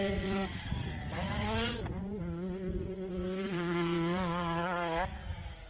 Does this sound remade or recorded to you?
remade